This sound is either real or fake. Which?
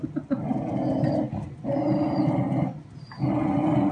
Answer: real